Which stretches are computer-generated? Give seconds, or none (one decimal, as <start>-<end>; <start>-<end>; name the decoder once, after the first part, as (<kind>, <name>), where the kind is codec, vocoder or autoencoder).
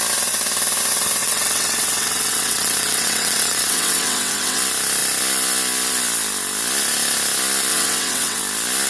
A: 1.2-4.6 (vocoder, WaveNeXt); 7.7-8.4